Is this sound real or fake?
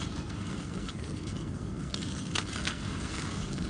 fake